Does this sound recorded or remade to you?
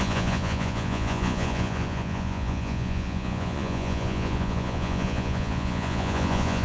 remade